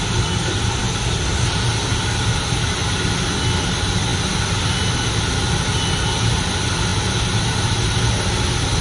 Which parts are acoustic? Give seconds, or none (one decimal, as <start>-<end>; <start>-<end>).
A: 0.0-8.8